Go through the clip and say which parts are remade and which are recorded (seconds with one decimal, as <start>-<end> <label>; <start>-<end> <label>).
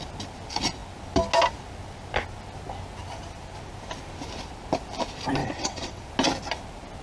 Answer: 0.0-5.4 recorded; 5.4-6.0 remade; 6.0-7.0 recorded